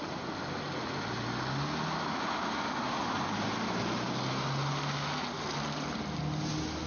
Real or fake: real